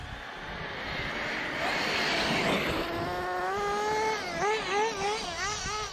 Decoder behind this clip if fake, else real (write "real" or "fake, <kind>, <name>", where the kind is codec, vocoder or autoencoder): real